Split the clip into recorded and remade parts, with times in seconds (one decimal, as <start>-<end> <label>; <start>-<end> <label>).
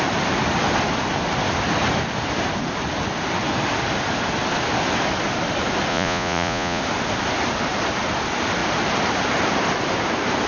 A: 0.0-5.9 recorded; 5.9-6.8 remade; 6.8-10.5 recorded